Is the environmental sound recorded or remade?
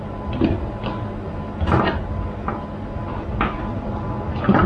recorded